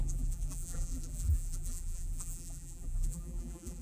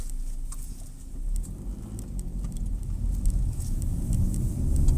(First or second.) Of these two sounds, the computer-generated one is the first